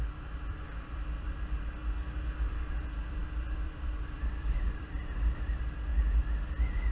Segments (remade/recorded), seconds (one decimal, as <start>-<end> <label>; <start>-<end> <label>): 0.0-1.8 remade; 1.8-2.4 recorded; 2.4-5.9 remade; 5.9-6.9 recorded